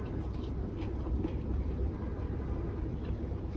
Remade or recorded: remade